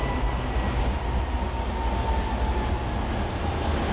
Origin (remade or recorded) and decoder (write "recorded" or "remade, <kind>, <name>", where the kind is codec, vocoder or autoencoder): recorded